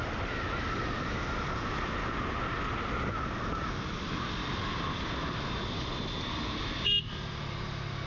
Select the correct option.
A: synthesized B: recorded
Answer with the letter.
B